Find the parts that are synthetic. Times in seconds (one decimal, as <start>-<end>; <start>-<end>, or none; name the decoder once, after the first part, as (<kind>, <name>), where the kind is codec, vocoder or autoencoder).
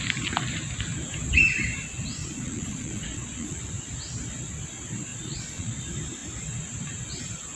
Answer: 2.2-3.6 (vocoder, Vocos); 5.1-5.8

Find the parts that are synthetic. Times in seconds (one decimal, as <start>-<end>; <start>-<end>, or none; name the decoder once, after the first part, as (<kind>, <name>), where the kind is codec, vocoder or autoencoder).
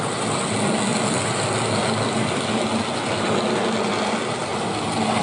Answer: none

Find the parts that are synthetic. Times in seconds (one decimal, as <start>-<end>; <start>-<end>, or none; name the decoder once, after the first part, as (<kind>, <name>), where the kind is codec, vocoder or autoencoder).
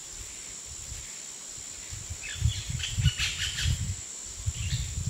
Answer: none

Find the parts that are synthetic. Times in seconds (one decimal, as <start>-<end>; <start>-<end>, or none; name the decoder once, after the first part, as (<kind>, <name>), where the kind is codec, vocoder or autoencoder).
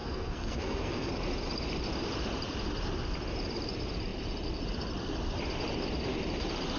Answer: 0.0-1.1 (codec, SNAC)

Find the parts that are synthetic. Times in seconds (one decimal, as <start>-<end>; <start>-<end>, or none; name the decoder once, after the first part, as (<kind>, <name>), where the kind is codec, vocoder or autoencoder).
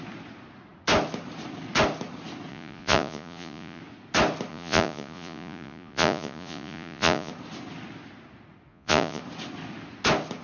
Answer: 2.5-3.8 (vocoder, Vocos); 4.5-7.3; 8.7-9.2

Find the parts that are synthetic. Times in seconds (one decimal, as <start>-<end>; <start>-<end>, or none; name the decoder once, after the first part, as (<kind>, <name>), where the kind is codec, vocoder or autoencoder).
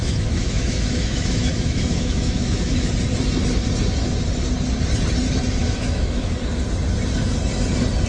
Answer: 0.0-2.9 (autoencoder, DAC-VAE); 5.6-6.4